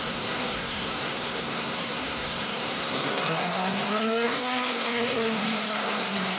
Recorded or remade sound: remade